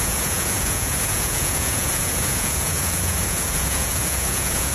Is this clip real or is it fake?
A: fake